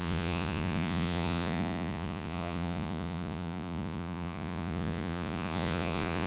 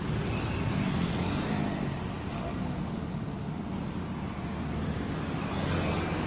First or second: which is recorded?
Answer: second